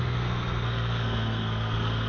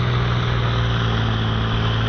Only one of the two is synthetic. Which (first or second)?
first